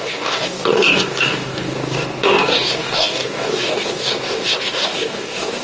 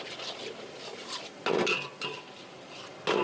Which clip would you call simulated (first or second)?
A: first